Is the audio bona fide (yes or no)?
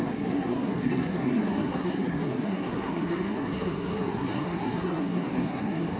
no